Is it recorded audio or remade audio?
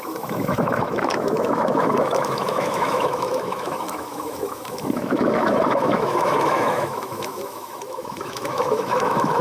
remade